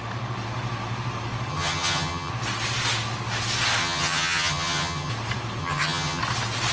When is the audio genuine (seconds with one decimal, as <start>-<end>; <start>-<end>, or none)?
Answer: 0.0-1.5; 2.3-3.8; 5.1-5.6; 6.2-6.7